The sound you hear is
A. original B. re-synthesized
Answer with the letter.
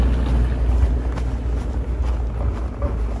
A